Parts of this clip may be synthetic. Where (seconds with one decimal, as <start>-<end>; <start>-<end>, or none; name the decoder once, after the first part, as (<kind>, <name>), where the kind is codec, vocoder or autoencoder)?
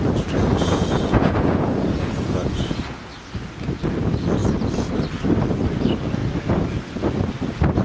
0.4-2.8 (vocoder, Vocos)